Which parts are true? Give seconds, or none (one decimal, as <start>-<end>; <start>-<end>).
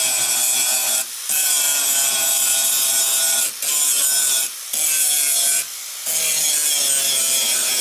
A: 0.0-7.8